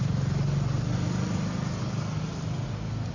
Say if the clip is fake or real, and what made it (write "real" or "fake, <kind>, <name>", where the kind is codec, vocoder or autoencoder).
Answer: real